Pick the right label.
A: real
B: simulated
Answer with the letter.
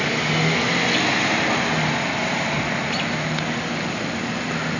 A